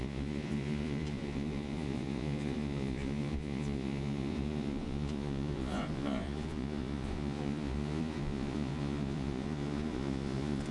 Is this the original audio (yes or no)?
no